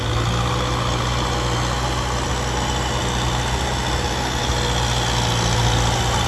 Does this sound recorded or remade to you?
recorded